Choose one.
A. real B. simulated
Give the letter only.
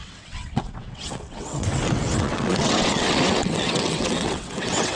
B